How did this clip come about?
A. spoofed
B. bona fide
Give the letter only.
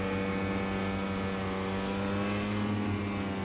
B